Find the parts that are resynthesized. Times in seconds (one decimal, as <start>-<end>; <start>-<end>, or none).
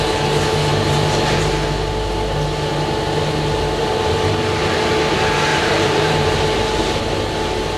0.7-1.4; 5.5-7.0